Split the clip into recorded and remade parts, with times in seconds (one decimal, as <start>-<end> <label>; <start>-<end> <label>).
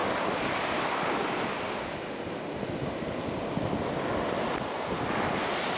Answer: 0.0-5.8 recorded